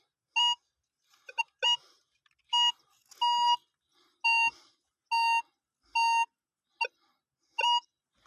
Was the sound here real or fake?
real